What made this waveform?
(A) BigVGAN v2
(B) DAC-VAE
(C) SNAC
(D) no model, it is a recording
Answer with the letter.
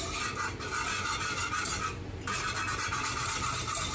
D